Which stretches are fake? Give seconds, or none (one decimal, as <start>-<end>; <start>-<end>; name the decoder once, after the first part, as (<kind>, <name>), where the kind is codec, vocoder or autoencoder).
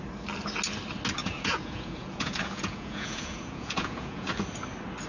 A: 1.2-4.3 (vocoder, Vocos)